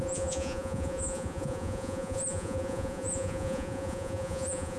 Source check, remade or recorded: remade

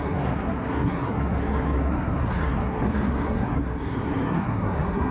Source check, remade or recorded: remade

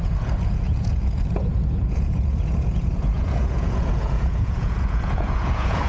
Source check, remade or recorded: remade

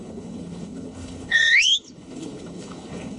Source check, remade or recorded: remade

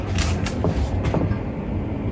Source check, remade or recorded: recorded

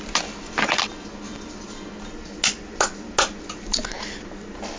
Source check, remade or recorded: recorded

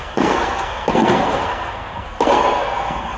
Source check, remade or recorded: remade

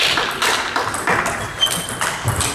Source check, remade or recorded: recorded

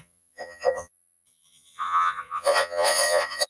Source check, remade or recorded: remade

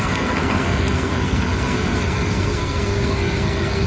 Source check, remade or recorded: remade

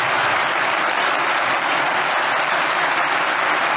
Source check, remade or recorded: recorded